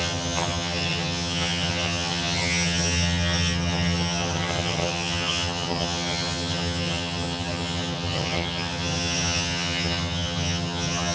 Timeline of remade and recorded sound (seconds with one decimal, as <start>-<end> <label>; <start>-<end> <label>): 0.0-11.1 remade